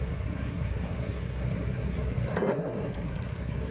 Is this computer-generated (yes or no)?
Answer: yes